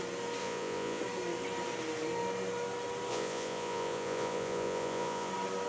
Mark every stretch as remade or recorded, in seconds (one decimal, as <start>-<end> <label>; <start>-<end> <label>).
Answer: 0.0-0.4 recorded; 0.4-1.0 remade; 1.0-3.1 recorded; 3.1-5.3 remade; 5.3-5.7 recorded